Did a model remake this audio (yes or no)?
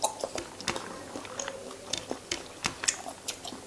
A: no